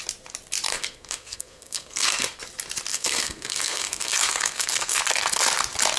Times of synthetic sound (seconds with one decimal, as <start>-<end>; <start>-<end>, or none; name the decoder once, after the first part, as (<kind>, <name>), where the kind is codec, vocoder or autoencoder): 0.7-2.4 (codec, SNAC); 2.9-5.0